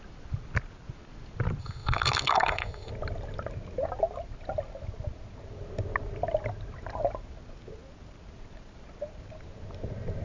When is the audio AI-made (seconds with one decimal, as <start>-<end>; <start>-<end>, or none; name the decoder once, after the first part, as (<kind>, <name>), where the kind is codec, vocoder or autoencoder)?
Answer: 1.6-2.9 (codec, SNAC)